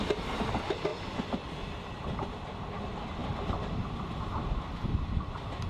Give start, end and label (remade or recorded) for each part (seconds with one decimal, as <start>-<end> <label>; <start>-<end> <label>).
0.0-5.7 recorded